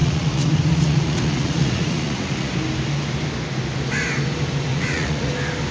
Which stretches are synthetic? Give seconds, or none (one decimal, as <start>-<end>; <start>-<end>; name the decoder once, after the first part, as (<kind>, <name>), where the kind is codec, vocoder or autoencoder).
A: 0.0-2.5 (vocoder, Vocos); 4.7-5.3